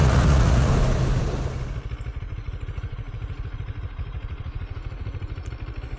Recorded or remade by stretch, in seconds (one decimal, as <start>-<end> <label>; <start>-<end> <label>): 0.0-0.7 remade; 0.7-2.1 recorded; 2.1-5.5 remade; 5.5-6.0 recorded